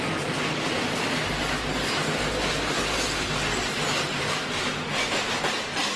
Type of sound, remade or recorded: recorded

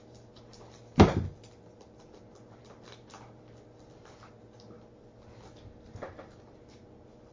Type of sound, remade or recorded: recorded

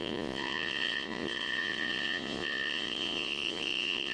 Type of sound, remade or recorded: remade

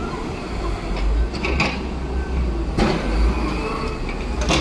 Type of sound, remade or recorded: recorded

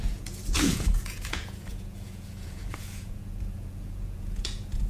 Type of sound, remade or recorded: remade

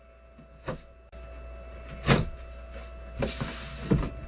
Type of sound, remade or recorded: recorded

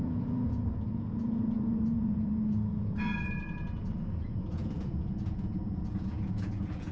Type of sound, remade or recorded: remade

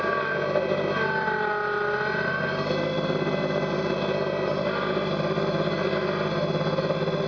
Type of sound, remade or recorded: recorded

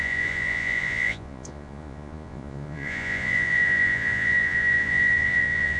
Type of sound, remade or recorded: remade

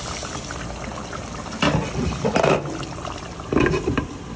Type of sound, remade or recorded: recorded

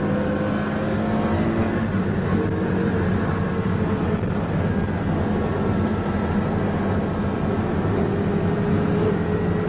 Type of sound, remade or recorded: recorded